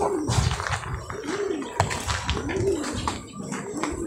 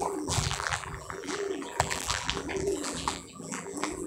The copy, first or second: second